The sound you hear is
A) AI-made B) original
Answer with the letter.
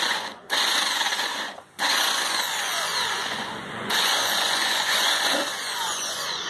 A